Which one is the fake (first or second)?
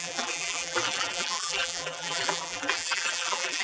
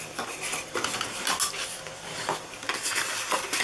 first